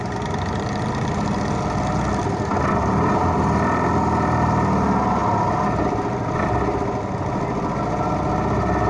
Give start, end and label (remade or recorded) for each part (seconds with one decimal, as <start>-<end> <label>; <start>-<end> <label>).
0.0-8.9 recorded